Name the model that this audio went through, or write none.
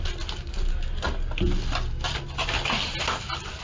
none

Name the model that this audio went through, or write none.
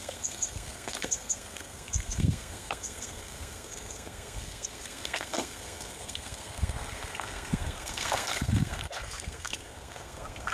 codec, SNAC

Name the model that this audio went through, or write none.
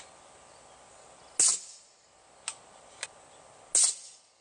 none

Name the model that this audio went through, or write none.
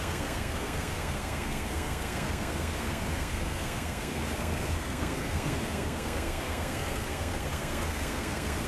codec, SNAC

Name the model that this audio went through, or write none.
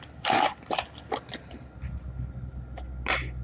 none